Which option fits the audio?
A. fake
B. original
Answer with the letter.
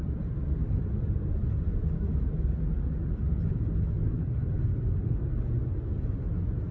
B